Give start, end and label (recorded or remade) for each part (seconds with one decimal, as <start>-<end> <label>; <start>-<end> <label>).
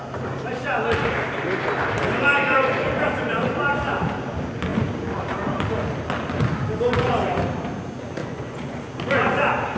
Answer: 0.0-8.2 recorded; 8.2-8.9 remade; 8.9-9.8 recorded